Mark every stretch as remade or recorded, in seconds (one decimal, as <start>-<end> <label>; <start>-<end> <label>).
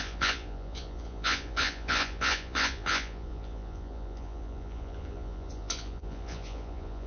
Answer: 0.0-7.1 remade